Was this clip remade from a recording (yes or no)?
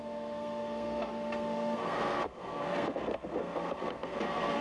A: yes